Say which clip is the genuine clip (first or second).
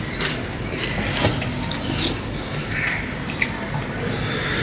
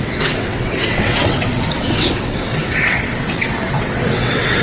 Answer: first